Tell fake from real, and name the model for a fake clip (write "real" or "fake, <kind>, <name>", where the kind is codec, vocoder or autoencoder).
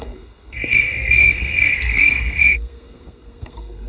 fake, codec, SNAC